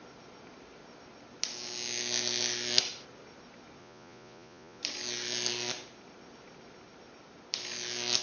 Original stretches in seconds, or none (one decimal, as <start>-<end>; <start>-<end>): 0.0-3.8; 4.8-8.2

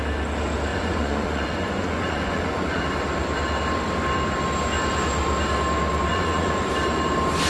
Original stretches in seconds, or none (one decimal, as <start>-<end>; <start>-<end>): 0.0-0.7; 2.8-6.1; 6.7-7.5

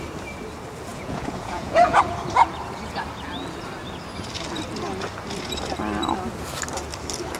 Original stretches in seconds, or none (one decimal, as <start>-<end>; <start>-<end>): 0.0-0.9; 2.0-7.4